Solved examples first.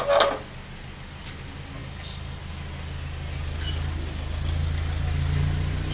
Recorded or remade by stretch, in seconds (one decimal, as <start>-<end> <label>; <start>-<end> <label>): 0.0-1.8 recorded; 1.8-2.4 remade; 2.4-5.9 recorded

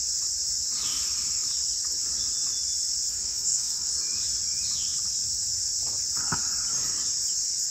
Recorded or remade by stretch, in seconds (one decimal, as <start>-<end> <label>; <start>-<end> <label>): 0.0-3.1 recorded; 3.1-3.9 remade; 3.9-7.7 recorded

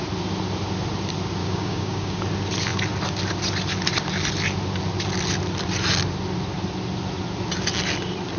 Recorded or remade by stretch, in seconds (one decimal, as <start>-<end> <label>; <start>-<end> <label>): 0.0-1.4 recorded; 1.4-2.2 remade; 2.2-8.4 recorded